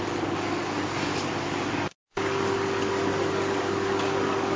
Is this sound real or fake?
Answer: fake